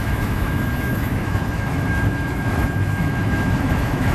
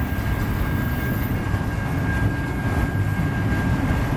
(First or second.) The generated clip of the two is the first